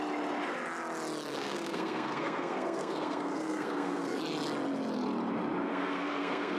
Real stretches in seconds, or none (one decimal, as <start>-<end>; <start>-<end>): 0.0-1.3; 4.2-5.6